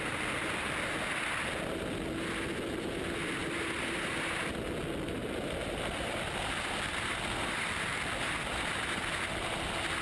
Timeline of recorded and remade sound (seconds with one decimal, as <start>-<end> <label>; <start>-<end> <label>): 0.0-5.2 recorded; 5.2-9.0 remade; 9.0-10.0 recorded